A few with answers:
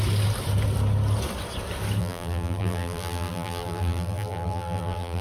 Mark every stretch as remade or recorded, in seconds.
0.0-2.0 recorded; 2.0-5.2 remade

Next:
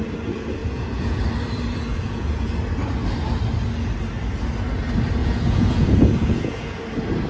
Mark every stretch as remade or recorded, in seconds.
0.0-0.6 recorded; 0.6-1.2 remade; 1.2-1.9 recorded; 1.9-2.5 remade; 2.5-5.2 recorded; 5.2-6.8 remade; 6.8-7.3 recorded

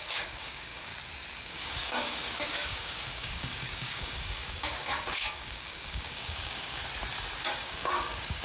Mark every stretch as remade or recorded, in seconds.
0.0-0.9 remade; 0.9-1.4 recorded; 1.4-6.8 remade; 6.8-7.4 recorded; 7.4-8.4 remade

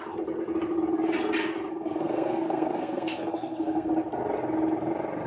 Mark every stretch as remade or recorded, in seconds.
0.0-1.7 recorded; 1.7-3.9 remade; 3.9-5.3 recorded

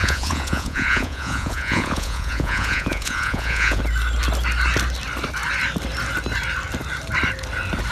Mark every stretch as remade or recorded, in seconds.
0.0-3.8 remade; 3.8-7.9 recorded

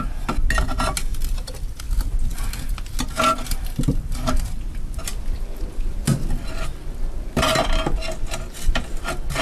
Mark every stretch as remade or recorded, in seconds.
0.0-9.4 recorded

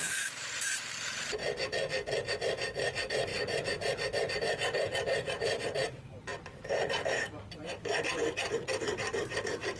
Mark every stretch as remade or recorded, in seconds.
0.0-1.4 remade; 1.4-2.3 recorded; 2.3-9.8 remade